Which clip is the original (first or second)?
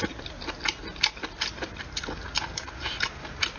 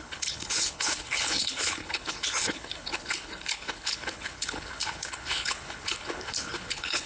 first